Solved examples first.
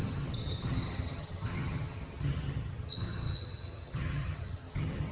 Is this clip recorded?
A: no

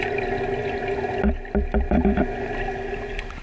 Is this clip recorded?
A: yes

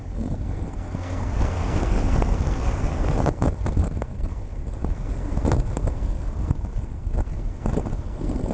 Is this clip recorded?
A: no